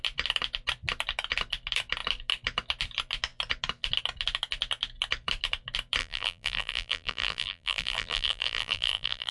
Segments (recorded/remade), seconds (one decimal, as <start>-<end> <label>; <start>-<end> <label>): 0.0-6.0 recorded; 6.0-9.3 remade